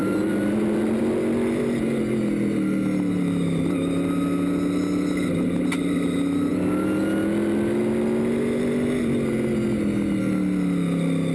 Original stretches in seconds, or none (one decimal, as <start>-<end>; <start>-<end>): 0.0-11.3